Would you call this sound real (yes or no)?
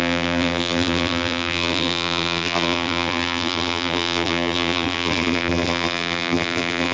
no